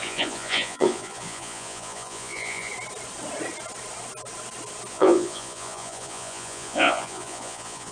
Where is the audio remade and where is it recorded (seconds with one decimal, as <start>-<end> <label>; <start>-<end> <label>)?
0.0-2.7 remade; 2.7-4.9 recorded; 4.9-7.9 remade